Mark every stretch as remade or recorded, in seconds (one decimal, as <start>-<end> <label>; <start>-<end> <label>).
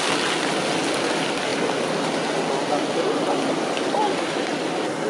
0.0-5.1 recorded